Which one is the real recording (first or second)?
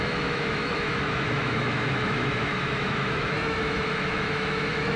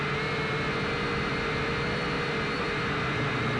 second